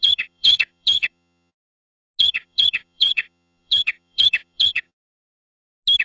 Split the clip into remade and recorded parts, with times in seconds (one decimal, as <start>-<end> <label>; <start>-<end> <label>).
0.0-1.5 remade; 1.5-2.2 recorded; 2.2-4.9 remade; 4.9-6.0 recorded